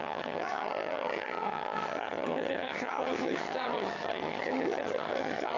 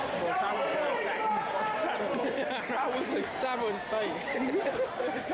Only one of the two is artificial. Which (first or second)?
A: first